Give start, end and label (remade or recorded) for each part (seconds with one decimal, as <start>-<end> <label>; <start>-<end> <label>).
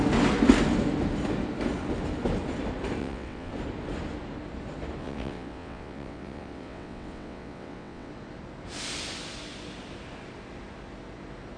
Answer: 0.0-3.0 recorded; 3.0-3.5 remade; 3.5-5.0 recorded; 5.0-8.1 remade; 8.1-11.6 recorded